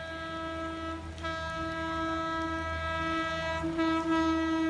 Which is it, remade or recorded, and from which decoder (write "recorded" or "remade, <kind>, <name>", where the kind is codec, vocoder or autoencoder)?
recorded